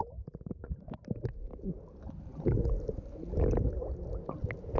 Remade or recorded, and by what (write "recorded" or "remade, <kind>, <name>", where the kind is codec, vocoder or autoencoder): recorded